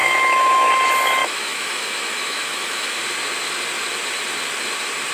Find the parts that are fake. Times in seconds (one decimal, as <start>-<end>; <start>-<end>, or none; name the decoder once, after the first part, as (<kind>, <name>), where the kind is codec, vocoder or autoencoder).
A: 0.0-0.7 (autoencoder, DAC-VAE); 1.2-3.0